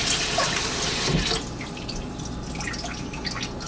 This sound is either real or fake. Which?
real